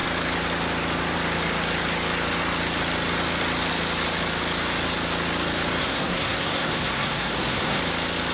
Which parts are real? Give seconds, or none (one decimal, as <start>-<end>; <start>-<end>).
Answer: 0.0-5.8; 7.8-8.3